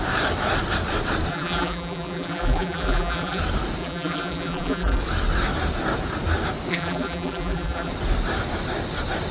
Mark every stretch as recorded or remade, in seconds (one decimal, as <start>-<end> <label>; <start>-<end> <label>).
0.0-1.3 recorded; 1.3-3.4 remade; 3.4-3.8 recorded; 3.8-5.0 remade; 5.0-6.7 recorded; 6.7-7.9 remade; 7.9-9.3 recorded